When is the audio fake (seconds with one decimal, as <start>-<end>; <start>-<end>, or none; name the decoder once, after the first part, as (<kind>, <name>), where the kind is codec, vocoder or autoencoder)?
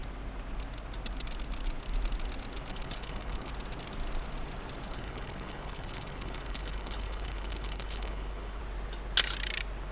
2.7-3.5 (codec, HILCodec); 4.9-8.6